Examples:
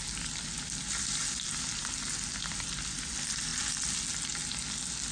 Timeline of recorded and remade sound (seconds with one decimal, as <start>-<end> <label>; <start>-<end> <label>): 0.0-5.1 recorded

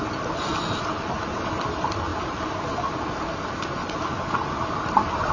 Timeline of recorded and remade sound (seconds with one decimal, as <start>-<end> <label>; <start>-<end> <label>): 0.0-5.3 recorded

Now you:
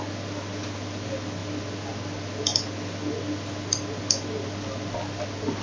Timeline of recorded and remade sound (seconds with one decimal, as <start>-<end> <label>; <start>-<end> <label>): 0.0-5.6 recorded

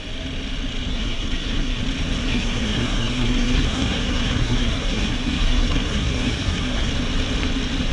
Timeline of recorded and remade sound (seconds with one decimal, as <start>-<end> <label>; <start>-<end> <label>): 0.0-0.9 recorded; 0.9-1.8 remade; 1.8-2.2 recorded; 2.2-6.9 remade; 6.9-7.9 recorded

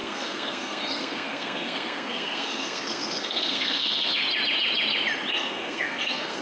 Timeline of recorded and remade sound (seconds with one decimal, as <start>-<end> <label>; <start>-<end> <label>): 0.0-4.2 remade; 4.2-5.3 recorded; 5.3-6.4 remade